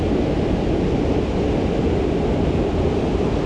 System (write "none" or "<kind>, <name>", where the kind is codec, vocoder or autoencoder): none